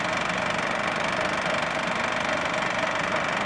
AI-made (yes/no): no